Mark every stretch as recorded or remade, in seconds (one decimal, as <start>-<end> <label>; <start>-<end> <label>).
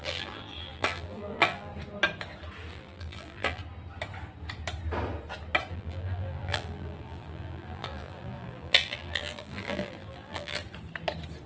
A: 0.0-1.7 remade; 1.7-2.7 recorded; 2.7-3.6 remade; 3.6-5.7 recorded; 5.7-10.6 remade; 10.6-11.5 recorded